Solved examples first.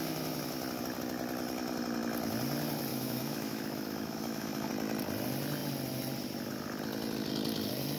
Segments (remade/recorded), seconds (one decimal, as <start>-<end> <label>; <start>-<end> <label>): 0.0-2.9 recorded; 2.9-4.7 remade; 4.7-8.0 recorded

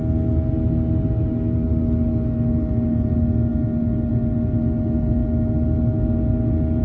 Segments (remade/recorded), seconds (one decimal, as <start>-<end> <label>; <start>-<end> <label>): 0.0-6.8 recorded

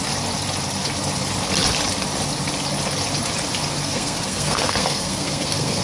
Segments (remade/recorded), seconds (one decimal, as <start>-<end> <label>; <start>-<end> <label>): 0.0-3.8 recorded; 3.8-5.8 remade